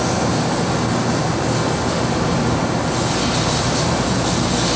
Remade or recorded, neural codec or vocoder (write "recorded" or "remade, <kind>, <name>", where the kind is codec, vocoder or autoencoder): recorded